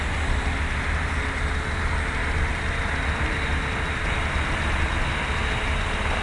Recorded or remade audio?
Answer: recorded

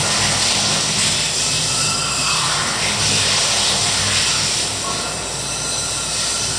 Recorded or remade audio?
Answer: recorded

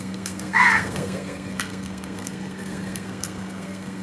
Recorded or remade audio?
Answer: remade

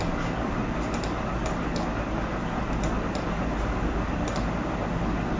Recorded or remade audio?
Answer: recorded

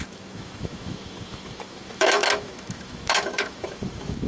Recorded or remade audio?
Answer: remade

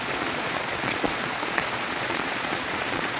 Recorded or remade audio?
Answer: remade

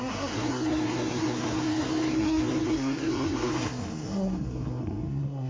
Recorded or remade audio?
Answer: remade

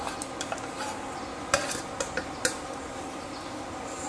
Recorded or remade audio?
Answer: recorded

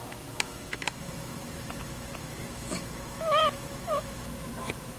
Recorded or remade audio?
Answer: remade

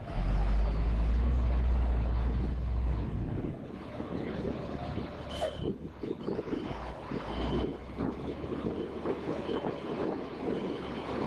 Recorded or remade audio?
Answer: remade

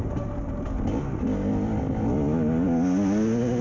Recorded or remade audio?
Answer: recorded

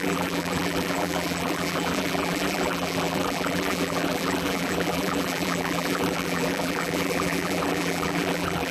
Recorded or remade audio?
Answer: remade